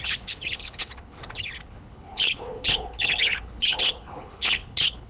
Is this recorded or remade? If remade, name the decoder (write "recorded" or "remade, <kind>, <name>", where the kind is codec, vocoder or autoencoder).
remade, codec, HILCodec